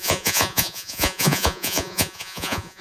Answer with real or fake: fake